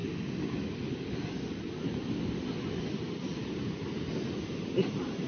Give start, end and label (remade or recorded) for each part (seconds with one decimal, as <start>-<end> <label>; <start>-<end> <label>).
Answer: 0.0-5.3 recorded

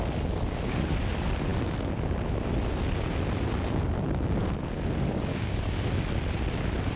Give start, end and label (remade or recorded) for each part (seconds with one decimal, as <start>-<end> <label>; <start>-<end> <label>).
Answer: 0.0-5.3 recorded; 5.3-5.9 remade; 5.9-7.0 recorded

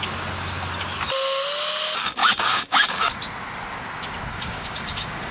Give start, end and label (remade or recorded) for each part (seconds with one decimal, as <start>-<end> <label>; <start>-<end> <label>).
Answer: 0.0-2.2 recorded; 2.2-2.9 remade; 2.9-4.3 recorded; 4.3-5.3 remade

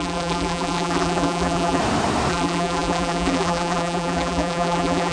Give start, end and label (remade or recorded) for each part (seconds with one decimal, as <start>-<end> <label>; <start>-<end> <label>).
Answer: 0.0-1.8 remade; 1.8-2.3 recorded; 2.3-5.1 remade

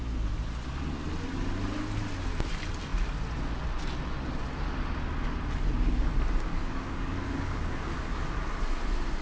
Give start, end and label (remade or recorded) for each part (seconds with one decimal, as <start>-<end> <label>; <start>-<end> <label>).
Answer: 0.0-6.5 recorded; 6.5-8.2 remade; 8.2-9.2 recorded

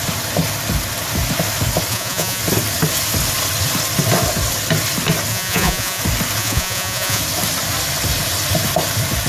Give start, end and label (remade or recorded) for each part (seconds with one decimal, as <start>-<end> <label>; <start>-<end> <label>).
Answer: 0.0-1.9 recorded; 1.9-2.4 remade; 2.4-5.3 recorded; 5.3-6.0 remade; 6.0-6.4 recorded; 6.4-7.2 remade; 7.2-9.3 recorded

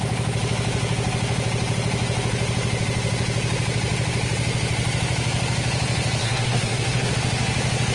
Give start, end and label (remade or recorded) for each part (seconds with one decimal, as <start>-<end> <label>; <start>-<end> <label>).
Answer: 0.0-6.2 recorded; 6.2-7.1 remade; 7.1-7.9 recorded